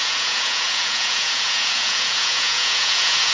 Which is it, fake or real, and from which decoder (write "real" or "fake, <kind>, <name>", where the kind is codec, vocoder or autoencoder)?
fake, vocoder, Vocos